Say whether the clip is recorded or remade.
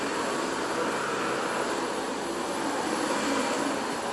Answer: recorded